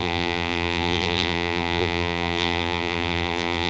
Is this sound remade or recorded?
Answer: remade